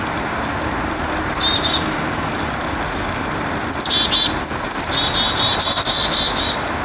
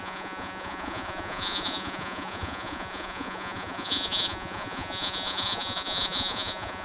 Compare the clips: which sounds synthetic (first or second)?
second